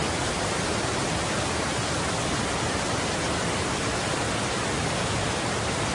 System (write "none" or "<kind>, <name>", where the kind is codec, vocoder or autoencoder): none